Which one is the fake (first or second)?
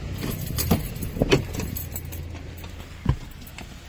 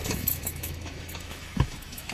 second